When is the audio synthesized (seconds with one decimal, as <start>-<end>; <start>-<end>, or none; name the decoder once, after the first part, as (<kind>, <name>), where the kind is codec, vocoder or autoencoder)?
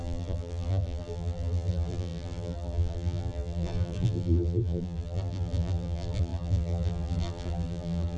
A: 0.0-8.2 (vocoder, BigVGAN v2)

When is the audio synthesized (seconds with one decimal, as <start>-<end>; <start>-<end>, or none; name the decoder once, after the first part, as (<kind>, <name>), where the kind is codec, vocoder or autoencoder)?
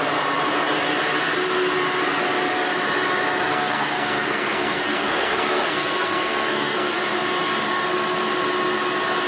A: 3.5-6.9 (codec, SNAC)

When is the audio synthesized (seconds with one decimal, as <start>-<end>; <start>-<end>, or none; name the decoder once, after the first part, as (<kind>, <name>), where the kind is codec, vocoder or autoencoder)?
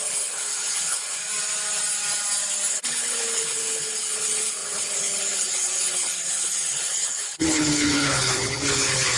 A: 0.0-1.2 (codec, HILCodec); 2.7-9.2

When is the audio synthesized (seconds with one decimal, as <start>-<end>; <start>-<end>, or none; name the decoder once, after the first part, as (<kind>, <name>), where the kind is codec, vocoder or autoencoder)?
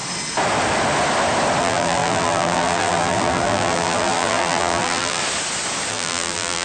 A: 1.6-5.2 (vocoder, BigVGAN v2); 5.9-6.6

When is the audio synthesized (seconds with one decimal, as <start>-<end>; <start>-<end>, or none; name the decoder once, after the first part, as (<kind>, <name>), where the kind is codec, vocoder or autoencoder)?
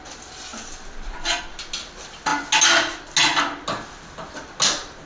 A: none